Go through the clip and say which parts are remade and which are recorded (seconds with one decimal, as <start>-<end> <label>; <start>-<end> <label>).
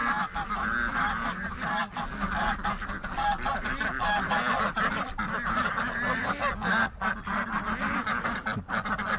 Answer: 0.0-9.2 recorded